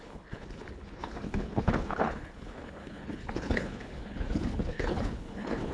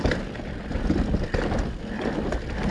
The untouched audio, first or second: second